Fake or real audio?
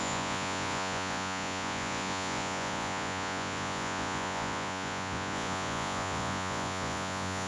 fake